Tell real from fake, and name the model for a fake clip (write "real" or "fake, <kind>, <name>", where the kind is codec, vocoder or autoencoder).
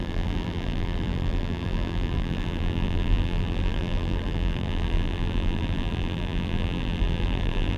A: fake, vocoder, BigVGAN v2